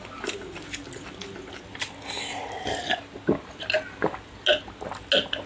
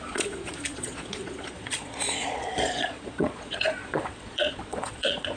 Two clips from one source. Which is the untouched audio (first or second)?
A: first